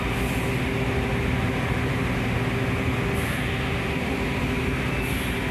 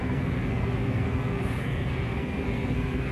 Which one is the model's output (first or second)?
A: second